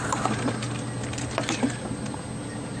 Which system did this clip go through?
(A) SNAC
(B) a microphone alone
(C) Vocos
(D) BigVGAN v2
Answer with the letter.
B